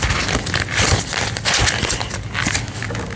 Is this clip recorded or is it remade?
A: recorded